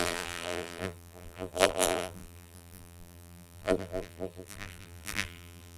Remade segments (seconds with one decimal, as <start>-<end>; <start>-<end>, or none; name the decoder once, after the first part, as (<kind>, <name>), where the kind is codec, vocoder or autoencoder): 0.0-5.8 (vocoder, BigVGAN v2)